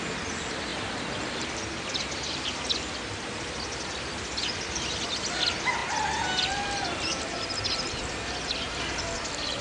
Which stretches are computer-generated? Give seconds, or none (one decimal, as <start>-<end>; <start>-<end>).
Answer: none